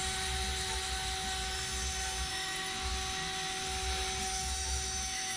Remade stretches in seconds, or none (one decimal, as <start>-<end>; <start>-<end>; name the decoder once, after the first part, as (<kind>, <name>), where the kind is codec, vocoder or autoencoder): 2.3-2.9 (autoencoder, DAC-VAE); 4.2-5.4